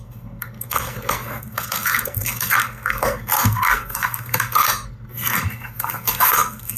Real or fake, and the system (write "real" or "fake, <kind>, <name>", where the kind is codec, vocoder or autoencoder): fake, codec, SNAC